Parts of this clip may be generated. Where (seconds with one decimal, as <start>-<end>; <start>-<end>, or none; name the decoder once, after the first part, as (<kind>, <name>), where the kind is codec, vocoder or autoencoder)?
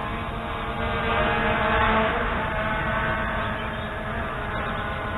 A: 1.9-2.4 (autoencoder, DAC-VAE)